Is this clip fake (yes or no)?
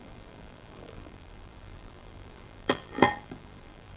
yes